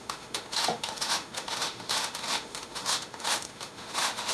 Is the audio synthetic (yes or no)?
yes